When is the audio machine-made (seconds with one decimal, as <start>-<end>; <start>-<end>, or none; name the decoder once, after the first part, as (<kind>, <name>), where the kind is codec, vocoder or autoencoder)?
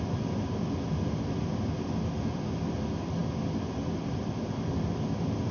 none